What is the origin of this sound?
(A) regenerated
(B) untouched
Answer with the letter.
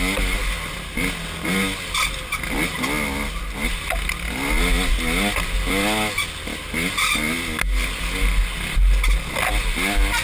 B